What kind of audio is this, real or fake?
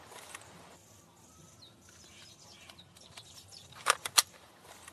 fake